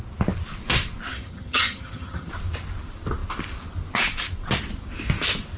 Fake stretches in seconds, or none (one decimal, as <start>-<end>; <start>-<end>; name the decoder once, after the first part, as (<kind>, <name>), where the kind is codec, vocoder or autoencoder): 1.1-2.3 (vocoder, HiFi-GAN)